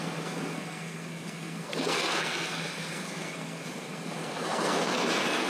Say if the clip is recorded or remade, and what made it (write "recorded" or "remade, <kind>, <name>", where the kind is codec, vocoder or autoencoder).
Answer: remade, codec, SNAC